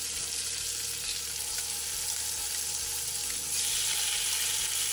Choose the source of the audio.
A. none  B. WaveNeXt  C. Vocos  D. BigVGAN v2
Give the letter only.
A